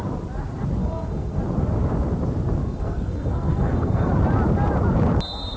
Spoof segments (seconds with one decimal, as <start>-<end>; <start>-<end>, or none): 0.8-1.4; 2.6-4.1